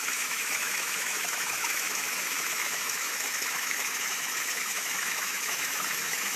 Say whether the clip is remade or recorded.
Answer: remade